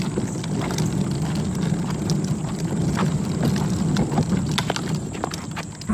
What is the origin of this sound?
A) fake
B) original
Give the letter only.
B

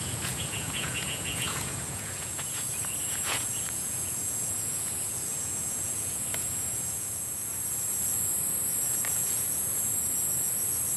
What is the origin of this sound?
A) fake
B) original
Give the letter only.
A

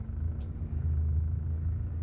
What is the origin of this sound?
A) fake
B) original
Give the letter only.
B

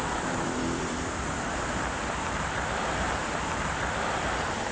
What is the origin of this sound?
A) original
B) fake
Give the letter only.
B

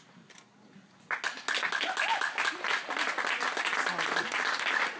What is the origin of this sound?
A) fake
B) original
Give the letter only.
B